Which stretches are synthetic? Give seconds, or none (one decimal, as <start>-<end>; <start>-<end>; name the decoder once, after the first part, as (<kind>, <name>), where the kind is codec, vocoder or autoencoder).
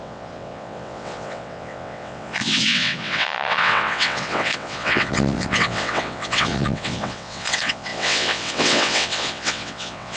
0.0-10.2 (vocoder, WaveNeXt)